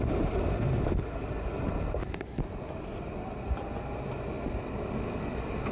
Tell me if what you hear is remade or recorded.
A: recorded